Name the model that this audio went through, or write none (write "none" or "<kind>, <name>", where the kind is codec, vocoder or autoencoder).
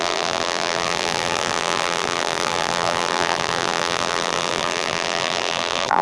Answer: vocoder, BigVGAN v2